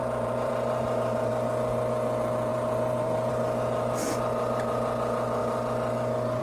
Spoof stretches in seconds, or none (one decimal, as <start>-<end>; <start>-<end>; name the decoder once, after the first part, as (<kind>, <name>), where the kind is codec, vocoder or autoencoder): 0.0-1.3 (vocoder, BigVGAN v2); 2.5-3.3